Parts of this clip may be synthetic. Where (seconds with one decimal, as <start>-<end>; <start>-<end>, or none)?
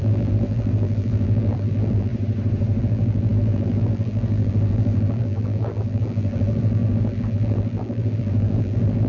0.0-2.1; 2.8-9.1